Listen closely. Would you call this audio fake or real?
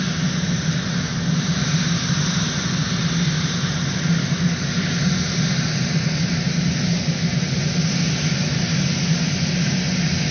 real